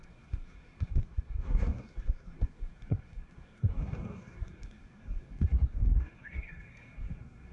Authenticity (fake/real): fake